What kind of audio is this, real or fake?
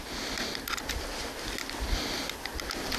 real